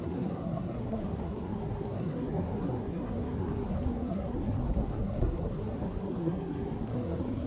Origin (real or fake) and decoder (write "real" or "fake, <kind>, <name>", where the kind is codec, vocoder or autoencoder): fake, codec, SNAC